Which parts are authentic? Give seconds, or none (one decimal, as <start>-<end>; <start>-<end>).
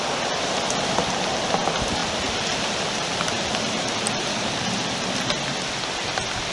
0.0-2.0; 4.7-6.5